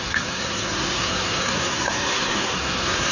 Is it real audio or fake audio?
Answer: fake